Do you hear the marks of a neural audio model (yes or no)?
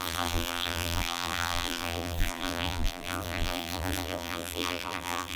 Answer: yes